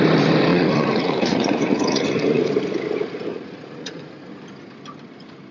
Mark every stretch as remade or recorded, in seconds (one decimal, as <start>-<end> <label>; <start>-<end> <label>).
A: 0.0-0.5 recorded; 0.5-2.5 remade; 2.5-3.3 recorded; 3.3-4.3 remade; 4.3-5.5 recorded